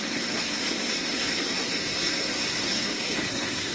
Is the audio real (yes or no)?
no